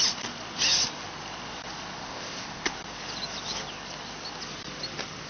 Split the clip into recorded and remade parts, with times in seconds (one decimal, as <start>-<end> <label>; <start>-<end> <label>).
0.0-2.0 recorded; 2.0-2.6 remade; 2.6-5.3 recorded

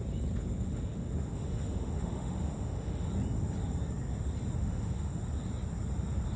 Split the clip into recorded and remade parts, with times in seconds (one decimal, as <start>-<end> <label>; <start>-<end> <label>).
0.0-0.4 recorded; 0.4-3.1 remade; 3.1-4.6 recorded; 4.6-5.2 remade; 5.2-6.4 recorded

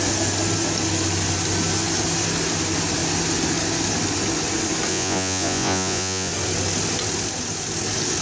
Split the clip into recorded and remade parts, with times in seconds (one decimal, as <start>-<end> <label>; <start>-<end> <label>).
0.0-4.9 recorded; 4.9-6.3 remade; 6.3-8.2 recorded

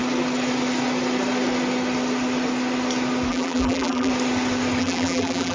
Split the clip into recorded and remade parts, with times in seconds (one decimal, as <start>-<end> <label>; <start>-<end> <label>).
0.0-3.3 recorded; 3.3-4.1 remade; 4.1-4.8 recorded; 4.8-5.5 remade